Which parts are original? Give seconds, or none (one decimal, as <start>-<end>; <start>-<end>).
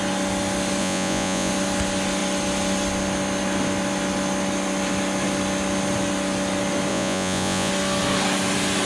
0.0-0.8; 1.5-6.9; 7.7-8.9